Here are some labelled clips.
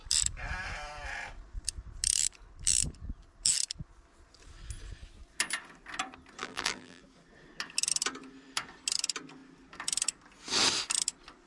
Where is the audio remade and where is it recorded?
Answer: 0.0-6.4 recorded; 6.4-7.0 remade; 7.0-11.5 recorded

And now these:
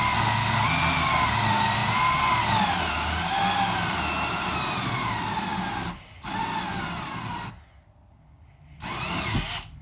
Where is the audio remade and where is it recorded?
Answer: 0.0-9.8 recorded

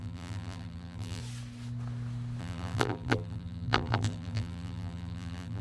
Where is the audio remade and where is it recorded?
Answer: 0.0-1.2 remade; 1.2-2.4 recorded; 2.4-5.6 remade